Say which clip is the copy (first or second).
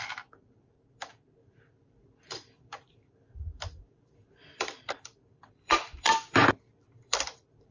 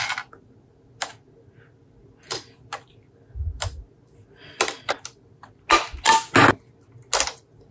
first